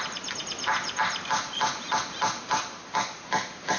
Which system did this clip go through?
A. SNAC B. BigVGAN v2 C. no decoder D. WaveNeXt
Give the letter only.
C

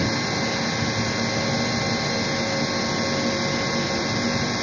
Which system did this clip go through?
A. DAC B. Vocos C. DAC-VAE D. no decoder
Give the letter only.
D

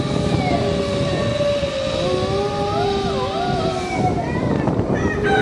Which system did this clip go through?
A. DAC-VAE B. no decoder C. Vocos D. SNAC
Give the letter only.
B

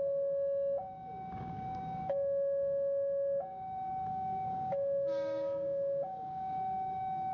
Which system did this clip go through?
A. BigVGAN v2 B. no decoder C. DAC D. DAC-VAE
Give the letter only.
C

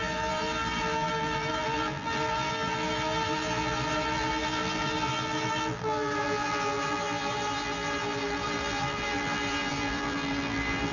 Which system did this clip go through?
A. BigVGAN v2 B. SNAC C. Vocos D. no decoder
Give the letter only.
A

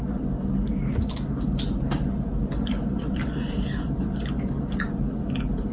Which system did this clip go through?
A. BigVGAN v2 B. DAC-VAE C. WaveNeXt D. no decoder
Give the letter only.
D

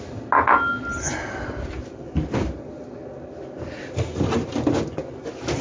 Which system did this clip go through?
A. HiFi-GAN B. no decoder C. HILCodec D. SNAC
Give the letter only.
B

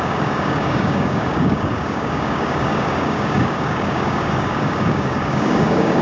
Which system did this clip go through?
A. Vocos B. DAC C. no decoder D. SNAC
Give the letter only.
B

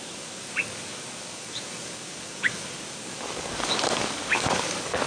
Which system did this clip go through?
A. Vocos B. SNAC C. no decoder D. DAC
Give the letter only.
D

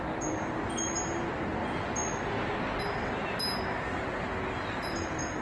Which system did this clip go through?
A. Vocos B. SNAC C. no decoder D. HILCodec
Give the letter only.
C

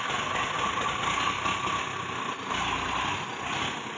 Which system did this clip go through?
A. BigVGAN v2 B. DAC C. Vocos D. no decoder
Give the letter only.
D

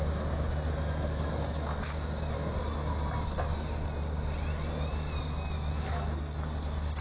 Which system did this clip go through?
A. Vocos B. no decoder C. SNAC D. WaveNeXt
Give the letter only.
B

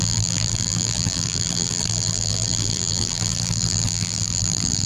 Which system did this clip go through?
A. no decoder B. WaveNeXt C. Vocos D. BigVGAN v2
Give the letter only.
D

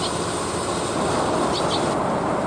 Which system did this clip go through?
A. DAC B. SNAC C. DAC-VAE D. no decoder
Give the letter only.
D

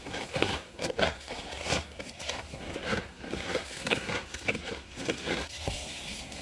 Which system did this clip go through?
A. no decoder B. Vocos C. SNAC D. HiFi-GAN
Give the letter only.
C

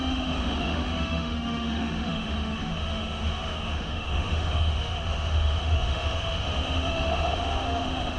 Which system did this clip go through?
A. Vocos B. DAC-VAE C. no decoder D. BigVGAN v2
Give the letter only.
B